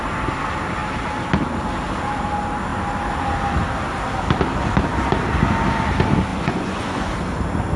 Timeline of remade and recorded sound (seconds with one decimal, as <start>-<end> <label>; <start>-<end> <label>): 0.0-6.3 recorded; 6.3-7.1 remade; 7.1-7.8 recorded